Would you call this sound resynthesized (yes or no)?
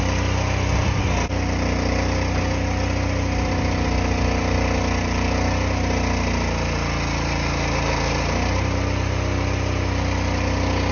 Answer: no